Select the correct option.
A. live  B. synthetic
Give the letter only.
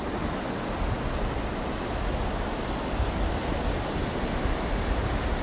A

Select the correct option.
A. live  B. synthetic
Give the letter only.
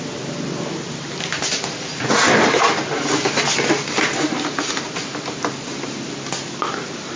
A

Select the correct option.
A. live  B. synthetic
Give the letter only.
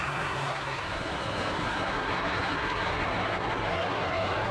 B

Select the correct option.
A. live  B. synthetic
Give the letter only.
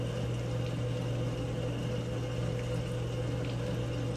A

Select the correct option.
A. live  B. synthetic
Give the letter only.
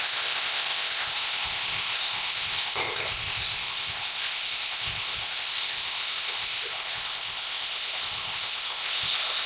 B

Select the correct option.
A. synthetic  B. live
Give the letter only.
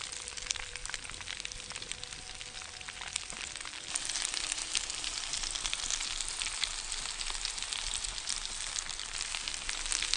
A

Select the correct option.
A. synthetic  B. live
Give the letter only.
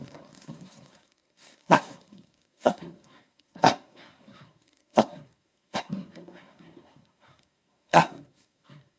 A